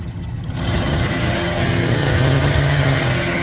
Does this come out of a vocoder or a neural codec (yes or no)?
yes